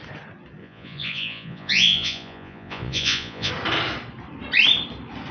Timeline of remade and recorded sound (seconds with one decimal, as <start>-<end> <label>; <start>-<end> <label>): 0.0-0.6 recorded; 0.6-3.5 remade; 3.5-5.3 recorded